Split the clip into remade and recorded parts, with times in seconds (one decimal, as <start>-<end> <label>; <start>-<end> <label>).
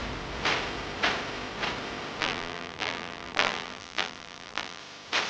0.0-2.2 recorded; 2.2-4.8 remade; 4.8-5.3 recorded